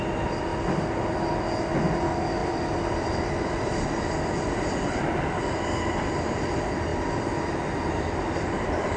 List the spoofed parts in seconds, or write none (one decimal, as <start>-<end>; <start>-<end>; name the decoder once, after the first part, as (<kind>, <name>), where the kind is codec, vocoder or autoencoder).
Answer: 2.4-6.4 (vocoder, BigVGAN v2)